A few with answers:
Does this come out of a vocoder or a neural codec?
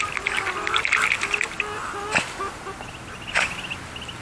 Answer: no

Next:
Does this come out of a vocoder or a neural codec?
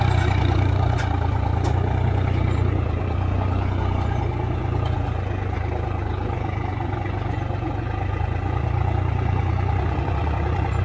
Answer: yes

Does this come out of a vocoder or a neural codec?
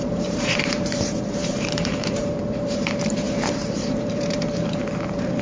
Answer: yes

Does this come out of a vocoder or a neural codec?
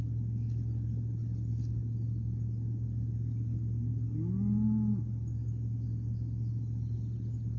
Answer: no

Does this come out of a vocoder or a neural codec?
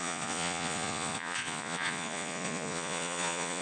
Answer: yes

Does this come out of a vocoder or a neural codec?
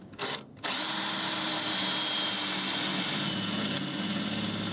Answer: no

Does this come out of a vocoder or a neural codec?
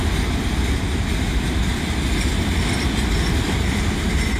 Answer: no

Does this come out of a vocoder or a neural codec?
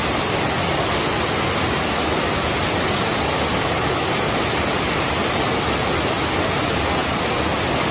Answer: no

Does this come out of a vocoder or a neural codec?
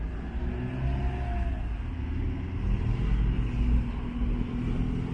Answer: no